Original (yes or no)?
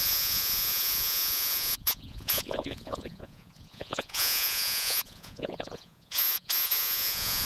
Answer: no